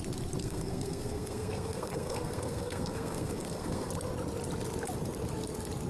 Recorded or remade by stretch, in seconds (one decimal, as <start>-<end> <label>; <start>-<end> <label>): 0.0-0.4 recorded; 0.4-3.9 remade; 3.9-5.9 recorded